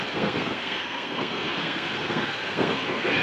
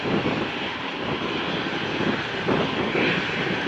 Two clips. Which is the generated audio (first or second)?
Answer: first